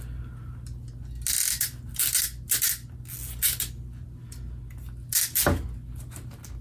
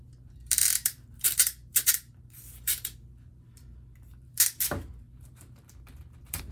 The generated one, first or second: second